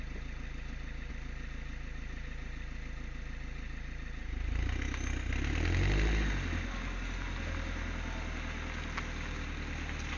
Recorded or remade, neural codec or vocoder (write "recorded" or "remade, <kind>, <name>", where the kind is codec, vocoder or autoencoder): recorded